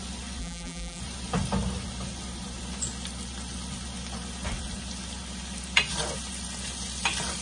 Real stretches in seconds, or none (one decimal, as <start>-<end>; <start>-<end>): 0.0-0.4; 1.0-7.4